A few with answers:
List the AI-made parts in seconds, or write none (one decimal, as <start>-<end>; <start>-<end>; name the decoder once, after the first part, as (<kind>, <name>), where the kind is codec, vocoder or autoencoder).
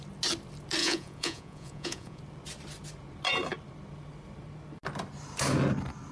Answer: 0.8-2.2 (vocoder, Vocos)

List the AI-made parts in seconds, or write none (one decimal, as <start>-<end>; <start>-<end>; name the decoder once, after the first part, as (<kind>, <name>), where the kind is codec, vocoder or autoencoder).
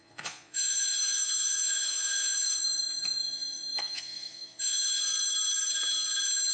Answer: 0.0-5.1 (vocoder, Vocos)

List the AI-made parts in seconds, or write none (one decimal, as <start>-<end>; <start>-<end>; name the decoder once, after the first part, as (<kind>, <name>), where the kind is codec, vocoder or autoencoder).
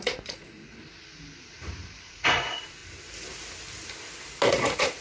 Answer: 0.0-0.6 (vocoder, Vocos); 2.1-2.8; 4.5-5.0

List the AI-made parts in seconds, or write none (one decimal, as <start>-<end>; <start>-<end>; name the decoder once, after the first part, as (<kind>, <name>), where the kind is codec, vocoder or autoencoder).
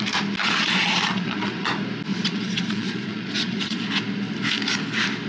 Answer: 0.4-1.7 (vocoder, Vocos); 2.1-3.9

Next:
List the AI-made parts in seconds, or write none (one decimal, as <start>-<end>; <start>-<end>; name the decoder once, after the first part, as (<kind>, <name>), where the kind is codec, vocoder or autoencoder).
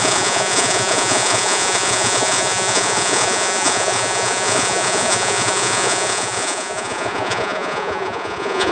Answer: 0.0-8.7 (vocoder, Vocos)